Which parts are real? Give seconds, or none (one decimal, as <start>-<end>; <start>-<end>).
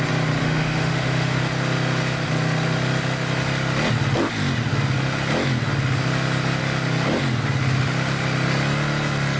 0.0-0.4; 1.4-9.4